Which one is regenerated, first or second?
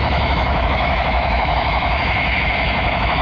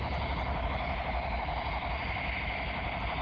first